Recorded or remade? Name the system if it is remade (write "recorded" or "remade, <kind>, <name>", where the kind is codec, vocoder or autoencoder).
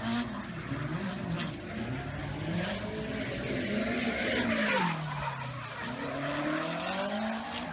recorded